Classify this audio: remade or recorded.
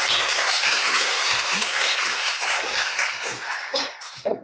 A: remade